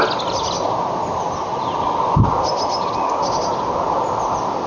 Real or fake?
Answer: real